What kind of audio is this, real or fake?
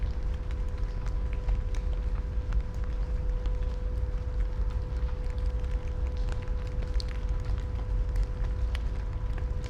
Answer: real